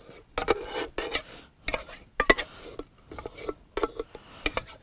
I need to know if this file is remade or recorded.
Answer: recorded